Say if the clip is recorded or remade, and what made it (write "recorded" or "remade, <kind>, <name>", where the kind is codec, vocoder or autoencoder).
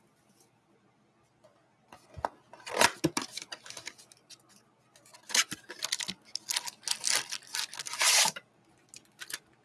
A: recorded